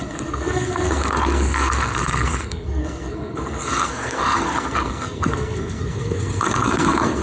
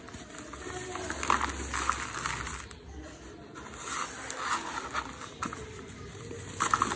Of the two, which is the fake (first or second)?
first